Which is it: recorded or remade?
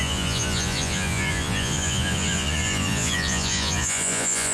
remade